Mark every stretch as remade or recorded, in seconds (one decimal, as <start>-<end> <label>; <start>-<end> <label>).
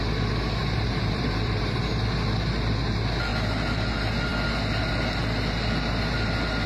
0.0-0.6 recorded; 0.6-1.8 remade; 1.8-6.7 recorded